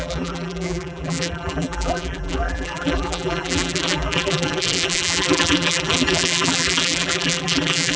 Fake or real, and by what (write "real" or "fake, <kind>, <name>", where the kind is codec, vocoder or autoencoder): fake, vocoder, BigVGAN v2